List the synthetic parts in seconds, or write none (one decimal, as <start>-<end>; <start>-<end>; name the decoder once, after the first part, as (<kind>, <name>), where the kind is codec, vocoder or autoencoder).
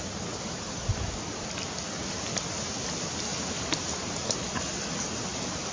none